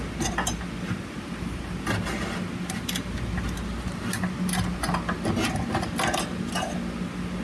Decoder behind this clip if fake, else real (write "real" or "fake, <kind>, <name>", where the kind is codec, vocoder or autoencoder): real